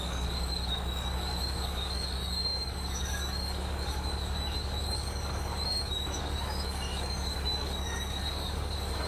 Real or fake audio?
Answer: fake